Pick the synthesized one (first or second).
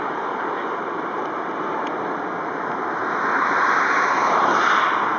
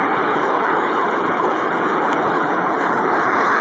second